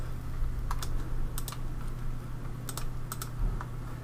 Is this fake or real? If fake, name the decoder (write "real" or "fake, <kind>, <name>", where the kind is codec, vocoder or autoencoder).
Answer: real